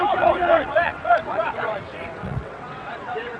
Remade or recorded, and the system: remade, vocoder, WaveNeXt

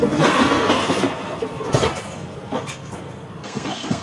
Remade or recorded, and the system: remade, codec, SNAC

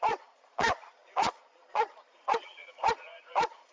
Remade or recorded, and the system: remade, vocoder, Vocos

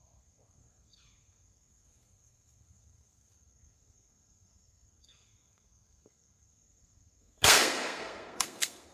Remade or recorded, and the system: remade, codec, SNAC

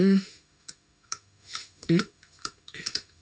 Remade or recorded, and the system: remade, autoencoder, DAC-VAE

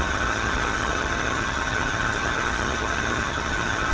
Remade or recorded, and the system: remade, vocoder, HiFi-GAN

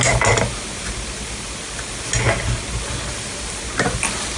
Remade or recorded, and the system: recorded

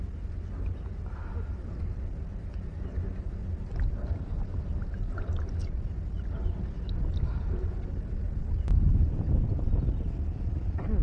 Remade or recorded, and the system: recorded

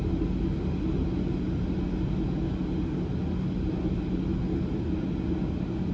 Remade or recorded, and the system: recorded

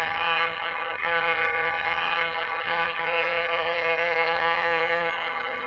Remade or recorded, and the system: remade, vocoder, HiFi-GAN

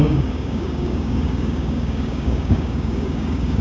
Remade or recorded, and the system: remade, codec, DAC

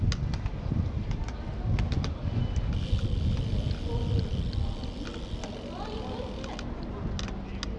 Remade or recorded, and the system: recorded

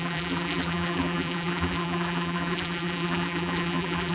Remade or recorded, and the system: remade, vocoder, BigVGAN v2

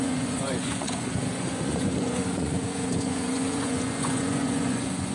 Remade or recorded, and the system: remade, vocoder, Vocos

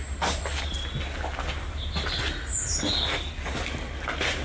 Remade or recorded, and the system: recorded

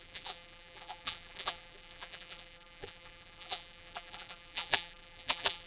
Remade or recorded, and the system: remade, vocoder, BigVGAN v2